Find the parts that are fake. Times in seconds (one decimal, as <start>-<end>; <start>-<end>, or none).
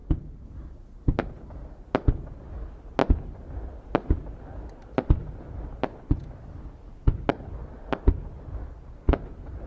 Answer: none